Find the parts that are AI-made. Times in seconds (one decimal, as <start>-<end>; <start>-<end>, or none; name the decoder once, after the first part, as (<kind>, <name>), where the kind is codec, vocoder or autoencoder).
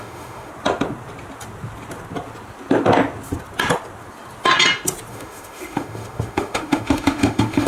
0.0-0.5 (autoencoder, DAC-VAE); 5.1-7.7